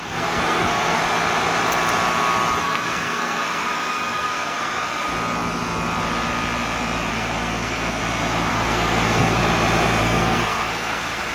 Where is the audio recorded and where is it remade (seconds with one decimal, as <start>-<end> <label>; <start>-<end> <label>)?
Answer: 0.0-1.0 remade; 1.0-2.6 recorded; 2.6-5.1 remade; 5.1-7.1 recorded; 7.1-8.0 remade; 8.0-8.5 recorded; 8.5-9.4 remade; 9.4-10.0 recorded; 10.0-11.3 remade

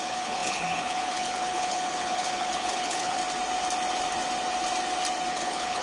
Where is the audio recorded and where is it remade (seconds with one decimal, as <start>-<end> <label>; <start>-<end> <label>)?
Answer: 0.0-3.2 remade; 3.2-5.3 recorded; 5.3-5.8 remade

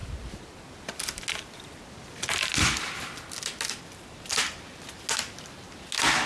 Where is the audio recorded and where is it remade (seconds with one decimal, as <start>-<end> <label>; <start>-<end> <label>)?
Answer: 0.0-6.3 recorded

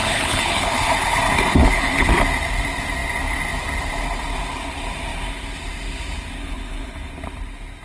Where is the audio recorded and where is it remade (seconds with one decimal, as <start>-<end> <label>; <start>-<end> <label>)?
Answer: 0.0-2.1 remade; 2.1-6.4 recorded; 6.4-7.1 remade; 7.1-7.8 recorded

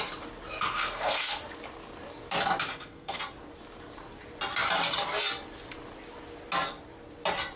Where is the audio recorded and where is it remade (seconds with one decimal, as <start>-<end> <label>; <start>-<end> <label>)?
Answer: 0.0-0.7 recorded; 0.7-1.4 remade; 1.4-2.7 recorded; 2.7-3.2 remade; 3.2-7.6 recorded

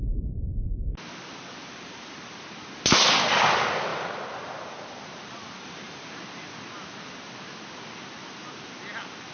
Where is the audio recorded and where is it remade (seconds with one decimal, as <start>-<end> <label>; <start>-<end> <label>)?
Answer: 0.0-1.5 recorded; 1.5-2.2 remade; 2.2-3.9 recorded; 3.9-6.1 remade; 6.1-9.3 recorded

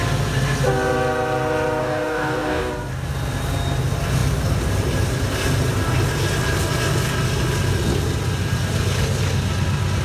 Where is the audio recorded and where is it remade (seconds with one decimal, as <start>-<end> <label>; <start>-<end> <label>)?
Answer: 0.0-1.8 recorded; 1.8-2.7 remade; 2.7-10.0 recorded

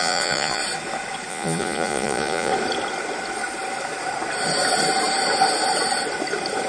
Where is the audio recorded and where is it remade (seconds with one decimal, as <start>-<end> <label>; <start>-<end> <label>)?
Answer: 0.0-0.6 remade; 0.6-1.3 recorded; 1.3-2.5 remade; 2.5-6.7 recorded